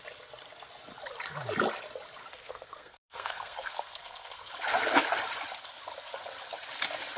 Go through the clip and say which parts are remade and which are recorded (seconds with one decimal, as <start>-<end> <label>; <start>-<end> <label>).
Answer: 0.0-2.3 recorded; 2.3-4.5 remade; 4.5-7.2 recorded